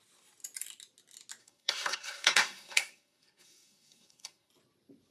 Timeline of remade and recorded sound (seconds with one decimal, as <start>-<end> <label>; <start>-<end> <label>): 0.0-1.4 recorded; 1.4-4.5 remade; 4.5-5.1 recorded